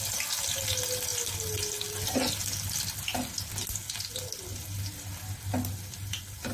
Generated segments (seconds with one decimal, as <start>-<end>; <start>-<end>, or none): none